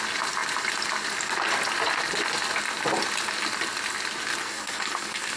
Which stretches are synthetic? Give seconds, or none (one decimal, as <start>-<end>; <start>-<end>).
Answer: 4.4-5.4